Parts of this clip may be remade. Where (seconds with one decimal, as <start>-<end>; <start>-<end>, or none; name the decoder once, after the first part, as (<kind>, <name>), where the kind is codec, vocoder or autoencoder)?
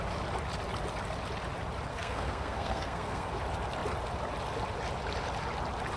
1.9-3.4 (codec, SNAC)